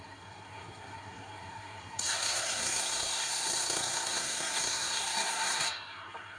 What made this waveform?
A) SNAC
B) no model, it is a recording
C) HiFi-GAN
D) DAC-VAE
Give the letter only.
A